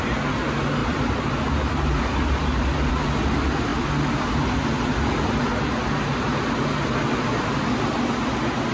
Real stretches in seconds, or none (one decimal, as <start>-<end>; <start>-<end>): 0.0-8.7